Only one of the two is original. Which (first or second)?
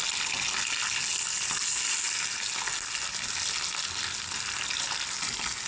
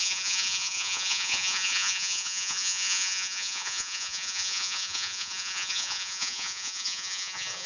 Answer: first